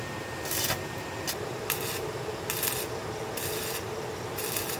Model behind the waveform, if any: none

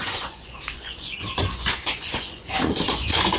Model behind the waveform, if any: vocoder, Vocos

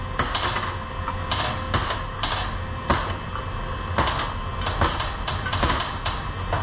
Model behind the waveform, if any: none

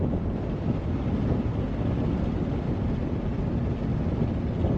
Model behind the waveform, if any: none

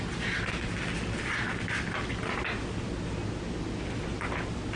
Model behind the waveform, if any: none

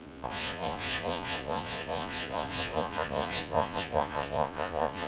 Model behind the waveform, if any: vocoder, Vocos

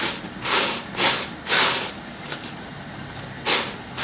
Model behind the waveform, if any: none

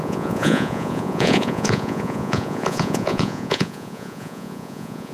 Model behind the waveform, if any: vocoder, Vocos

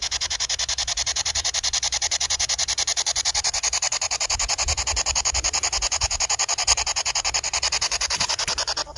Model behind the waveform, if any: vocoder, Vocos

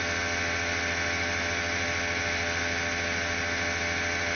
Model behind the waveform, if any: none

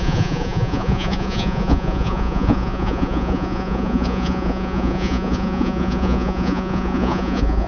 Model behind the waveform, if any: vocoder, Vocos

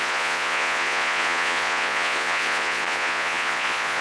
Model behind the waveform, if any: vocoder, Vocos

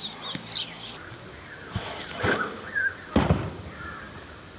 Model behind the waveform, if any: none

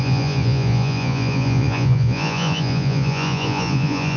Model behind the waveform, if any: vocoder, Vocos